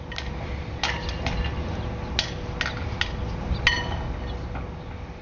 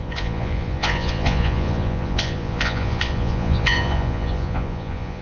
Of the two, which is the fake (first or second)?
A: second